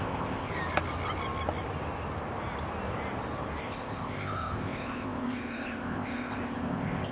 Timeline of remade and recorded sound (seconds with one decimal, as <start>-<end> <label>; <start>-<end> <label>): 0.0-0.5 remade; 0.5-3.6 recorded; 3.6-7.1 remade